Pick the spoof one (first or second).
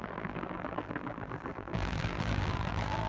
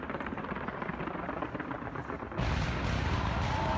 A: first